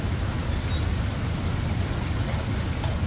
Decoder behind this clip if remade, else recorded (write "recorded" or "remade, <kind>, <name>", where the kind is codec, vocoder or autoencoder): recorded